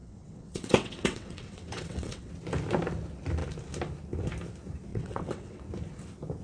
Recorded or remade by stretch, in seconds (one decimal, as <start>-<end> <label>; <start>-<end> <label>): 0.0-2.3 remade; 2.3-4.9 recorded; 4.9-5.6 remade; 5.6-6.4 recorded